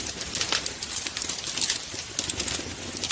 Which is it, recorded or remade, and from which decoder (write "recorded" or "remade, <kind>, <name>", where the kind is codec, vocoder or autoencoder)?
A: recorded